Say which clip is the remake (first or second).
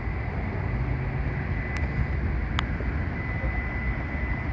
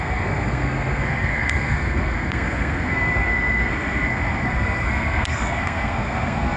second